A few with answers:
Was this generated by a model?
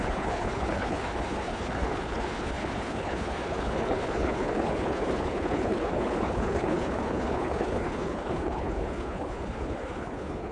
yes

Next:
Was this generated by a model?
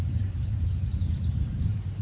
yes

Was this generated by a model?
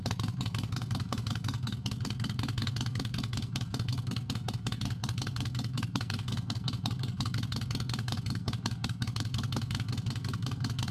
yes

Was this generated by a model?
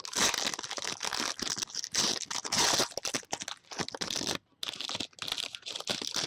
no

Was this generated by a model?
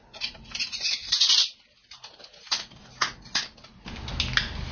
no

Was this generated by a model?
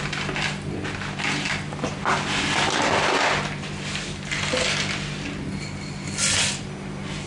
no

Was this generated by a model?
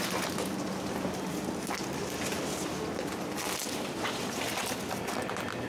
no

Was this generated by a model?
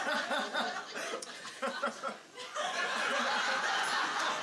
yes